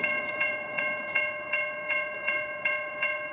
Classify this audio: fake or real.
fake